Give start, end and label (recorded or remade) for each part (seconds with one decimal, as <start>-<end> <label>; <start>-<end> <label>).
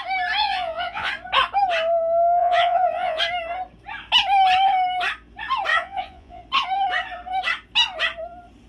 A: 0.0-0.4 recorded; 0.4-1.1 remade; 1.1-2.4 recorded; 2.4-3.2 remade; 3.2-5.7 recorded; 5.7-6.4 remade; 6.4-8.7 recorded